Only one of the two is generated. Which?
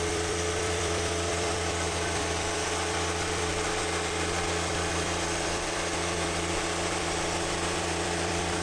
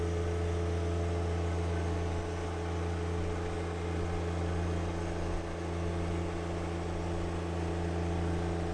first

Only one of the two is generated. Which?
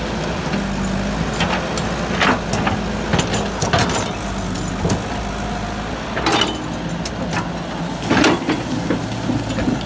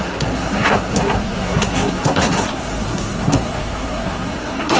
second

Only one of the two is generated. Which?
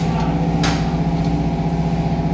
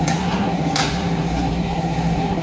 second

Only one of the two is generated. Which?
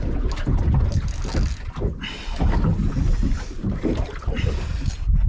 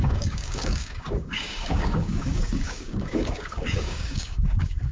second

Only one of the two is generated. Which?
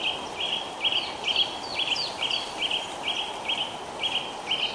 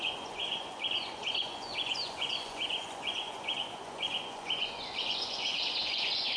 second